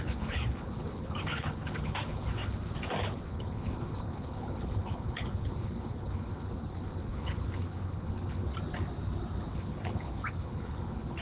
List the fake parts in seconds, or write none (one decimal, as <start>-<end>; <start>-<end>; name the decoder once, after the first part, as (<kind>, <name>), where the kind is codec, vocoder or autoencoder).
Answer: 0.0-2.4 (codec, HILCodec); 3.1-8.5; 9.5-11.2